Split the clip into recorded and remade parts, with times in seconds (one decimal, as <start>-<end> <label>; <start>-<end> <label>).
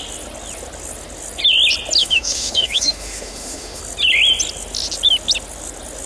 0.0-2.0 recorded; 2.0-3.8 remade; 3.8-6.1 recorded